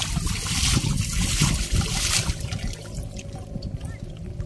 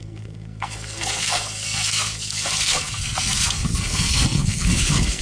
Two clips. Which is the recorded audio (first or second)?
first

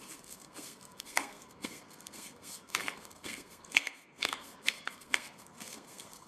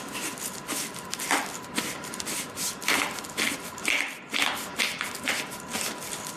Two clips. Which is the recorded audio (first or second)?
second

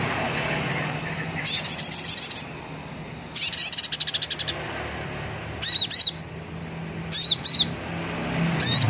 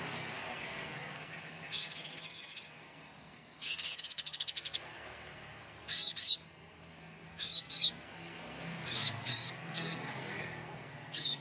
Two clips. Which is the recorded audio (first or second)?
first